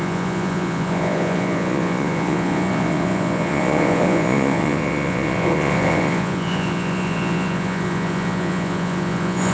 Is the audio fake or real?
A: fake